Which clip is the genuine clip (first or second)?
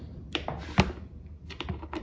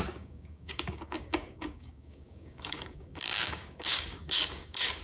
first